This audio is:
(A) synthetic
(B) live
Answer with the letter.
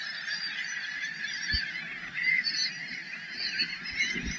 B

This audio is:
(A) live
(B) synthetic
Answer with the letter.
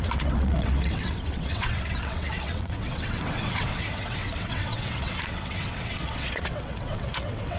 B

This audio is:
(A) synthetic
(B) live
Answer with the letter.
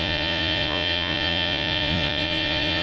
A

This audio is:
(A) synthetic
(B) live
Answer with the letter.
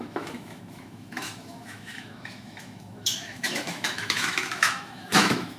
A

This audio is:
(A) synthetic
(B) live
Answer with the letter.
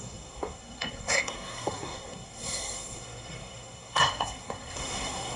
A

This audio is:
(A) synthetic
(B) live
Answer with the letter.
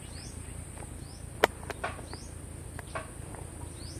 B